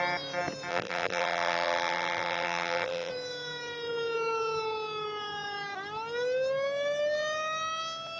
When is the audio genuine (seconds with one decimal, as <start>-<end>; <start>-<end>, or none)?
0.0-0.7; 3.1-8.2

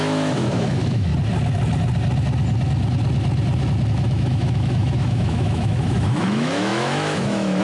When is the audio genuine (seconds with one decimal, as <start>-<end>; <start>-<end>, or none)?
1.1-3.9

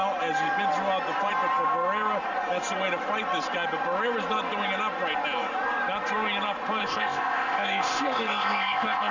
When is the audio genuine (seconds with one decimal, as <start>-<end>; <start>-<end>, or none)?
0.0-6.8

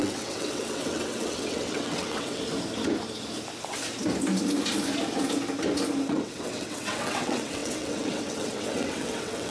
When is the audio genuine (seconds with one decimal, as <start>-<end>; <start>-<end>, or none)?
2.4-6.1

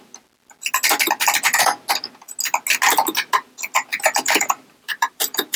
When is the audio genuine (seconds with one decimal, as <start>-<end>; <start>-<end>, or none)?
0.0-3.9

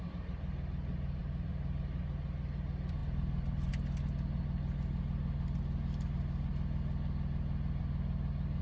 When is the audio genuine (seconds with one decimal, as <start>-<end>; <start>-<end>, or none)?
0.0-1.2; 1.8-3.0; 3.7-8.6

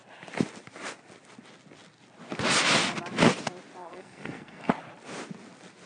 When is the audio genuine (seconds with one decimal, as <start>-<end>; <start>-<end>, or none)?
0.0-3.8; 4.7-5.9